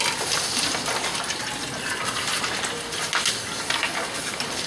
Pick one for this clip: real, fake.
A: real